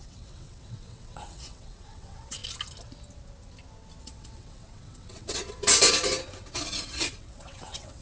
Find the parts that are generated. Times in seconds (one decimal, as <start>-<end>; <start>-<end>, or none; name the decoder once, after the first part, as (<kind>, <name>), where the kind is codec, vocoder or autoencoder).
0.0-2.4 (vocoder, WaveNeXt); 4.0-5.4; 6.8-8.0